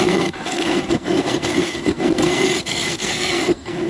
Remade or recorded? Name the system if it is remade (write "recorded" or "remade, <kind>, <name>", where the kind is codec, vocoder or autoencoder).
remade, codec, SNAC